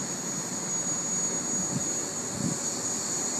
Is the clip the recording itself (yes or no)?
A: yes